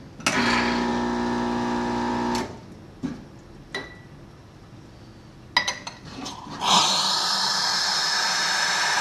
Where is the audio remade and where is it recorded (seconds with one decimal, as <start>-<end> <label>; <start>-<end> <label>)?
0.0-9.0 recorded